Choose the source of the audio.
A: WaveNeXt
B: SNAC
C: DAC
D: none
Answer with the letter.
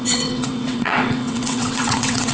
A